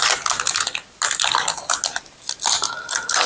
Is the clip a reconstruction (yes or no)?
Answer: no